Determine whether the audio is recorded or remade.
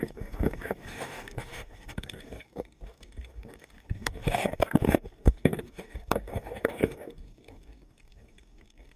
remade